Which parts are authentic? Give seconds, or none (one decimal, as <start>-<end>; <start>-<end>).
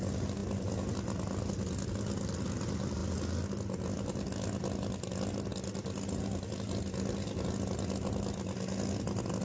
0.0-9.4